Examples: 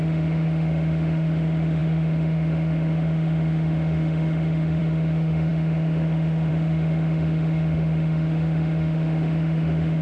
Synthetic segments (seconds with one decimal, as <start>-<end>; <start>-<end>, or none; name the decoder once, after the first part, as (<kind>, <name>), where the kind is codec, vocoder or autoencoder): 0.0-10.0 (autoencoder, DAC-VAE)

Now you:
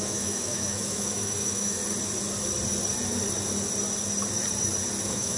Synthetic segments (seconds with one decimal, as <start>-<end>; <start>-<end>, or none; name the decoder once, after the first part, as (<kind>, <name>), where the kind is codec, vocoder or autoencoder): 0.0-1.8 (autoencoder, DAC-VAE); 5.0-5.4

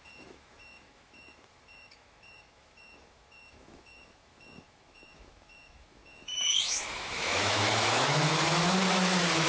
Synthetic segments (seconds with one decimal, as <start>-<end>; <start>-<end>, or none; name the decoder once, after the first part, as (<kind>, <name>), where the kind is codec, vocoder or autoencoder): 0.0-9.5 (autoencoder, DAC-VAE)

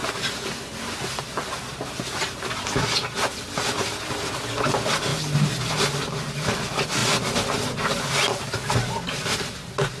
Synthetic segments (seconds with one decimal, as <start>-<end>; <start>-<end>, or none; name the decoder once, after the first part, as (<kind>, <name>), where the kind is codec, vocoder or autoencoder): none

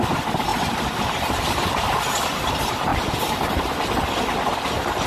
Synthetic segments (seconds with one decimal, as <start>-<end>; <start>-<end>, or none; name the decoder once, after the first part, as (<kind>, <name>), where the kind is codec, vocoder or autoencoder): none

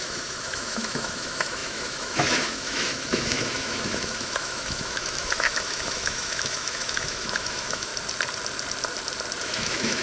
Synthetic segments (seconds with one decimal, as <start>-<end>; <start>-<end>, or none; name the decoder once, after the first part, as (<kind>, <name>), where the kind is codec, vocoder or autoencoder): 0.0-7.9 (autoencoder, DAC-VAE); 9.4-10.0

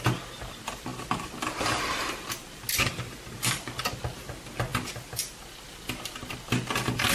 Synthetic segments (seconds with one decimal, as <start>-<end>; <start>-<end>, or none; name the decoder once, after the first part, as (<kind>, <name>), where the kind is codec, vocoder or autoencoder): none

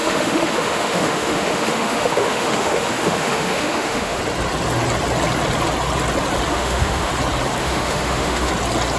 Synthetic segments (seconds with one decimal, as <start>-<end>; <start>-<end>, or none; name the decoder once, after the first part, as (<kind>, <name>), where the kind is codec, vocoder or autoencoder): 0.0-4.2 (autoencoder, DAC-VAE); 6.5-7.1; 7.6-8.5